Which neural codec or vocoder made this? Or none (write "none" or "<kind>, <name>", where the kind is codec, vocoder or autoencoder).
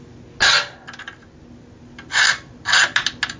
none